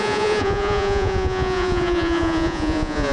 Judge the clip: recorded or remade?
remade